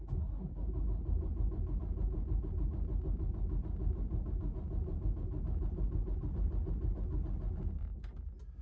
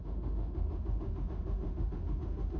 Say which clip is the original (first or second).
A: first